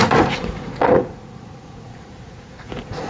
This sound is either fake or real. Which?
fake